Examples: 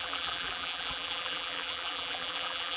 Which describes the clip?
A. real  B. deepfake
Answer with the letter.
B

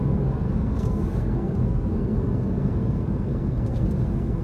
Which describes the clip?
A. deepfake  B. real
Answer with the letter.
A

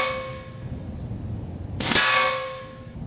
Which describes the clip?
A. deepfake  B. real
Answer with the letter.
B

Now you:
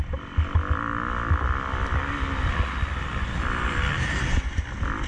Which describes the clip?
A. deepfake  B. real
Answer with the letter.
B